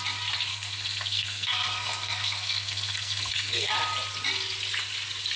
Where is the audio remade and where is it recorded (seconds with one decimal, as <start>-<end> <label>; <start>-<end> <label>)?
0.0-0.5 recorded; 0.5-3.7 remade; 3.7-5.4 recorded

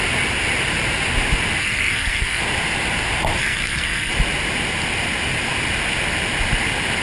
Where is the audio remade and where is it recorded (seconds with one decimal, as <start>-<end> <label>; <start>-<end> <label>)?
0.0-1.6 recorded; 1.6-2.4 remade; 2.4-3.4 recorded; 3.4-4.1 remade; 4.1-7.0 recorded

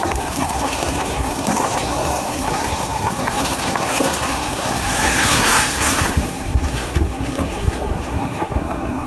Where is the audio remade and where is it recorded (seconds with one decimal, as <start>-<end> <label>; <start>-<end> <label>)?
0.0-9.1 remade